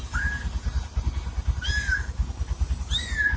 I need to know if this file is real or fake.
real